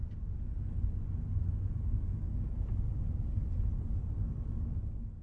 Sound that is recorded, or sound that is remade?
recorded